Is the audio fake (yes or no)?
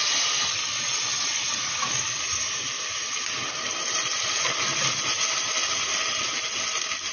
no